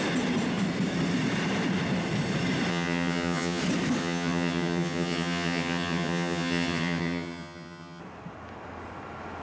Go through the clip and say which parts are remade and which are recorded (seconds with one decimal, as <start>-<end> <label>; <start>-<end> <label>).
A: 0.0-2.7 recorded; 2.7-3.6 remade; 3.6-4.0 recorded; 4.0-8.0 remade; 8.0-9.4 recorded